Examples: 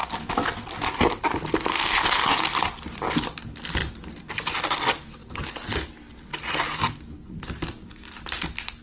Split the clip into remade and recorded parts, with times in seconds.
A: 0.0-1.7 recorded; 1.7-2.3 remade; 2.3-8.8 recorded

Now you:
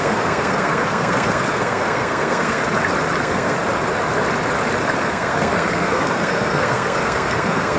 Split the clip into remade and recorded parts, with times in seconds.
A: 0.0-2.6 remade; 2.6-3.2 recorded; 3.2-3.6 remade; 3.6-5.0 recorded; 5.0-7.8 remade

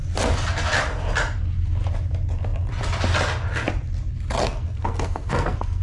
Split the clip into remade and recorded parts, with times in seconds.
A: 0.0-4.4 recorded; 4.4-5.8 remade

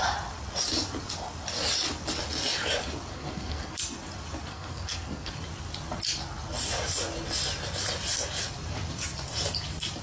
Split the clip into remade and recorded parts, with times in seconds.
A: 0.0-3.1 recorded; 3.1-3.8 remade; 3.8-4.5 recorded; 4.5-5.3 remade; 5.3-10.0 recorded

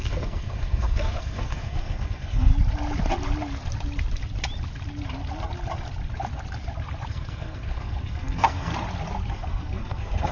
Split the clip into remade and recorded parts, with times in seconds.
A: 0.0-2.5 remade; 2.5-7.1 recorded; 7.1-8.7 remade; 8.7-9.3 recorded; 9.3-10.3 remade